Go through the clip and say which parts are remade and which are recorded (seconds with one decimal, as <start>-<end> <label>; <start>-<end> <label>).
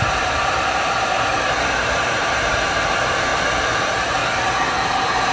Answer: 0.0-3.3 remade; 3.3-3.8 recorded; 3.8-4.2 remade; 4.2-4.7 recorded; 4.7-5.3 remade